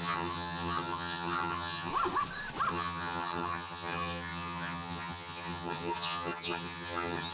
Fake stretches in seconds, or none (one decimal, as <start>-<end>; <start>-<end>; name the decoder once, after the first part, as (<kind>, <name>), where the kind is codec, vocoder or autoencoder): 0.0-1.9 (vocoder, HiFi-GAN); 2.7-7.3